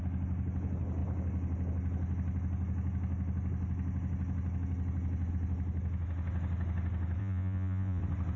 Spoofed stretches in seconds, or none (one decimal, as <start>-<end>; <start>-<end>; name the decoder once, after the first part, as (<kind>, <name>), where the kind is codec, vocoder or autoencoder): 7.2-8.0 (vocoder, Vocos)